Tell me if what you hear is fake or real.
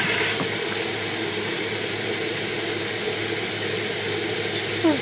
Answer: real